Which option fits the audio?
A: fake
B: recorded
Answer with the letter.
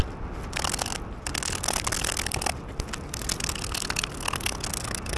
B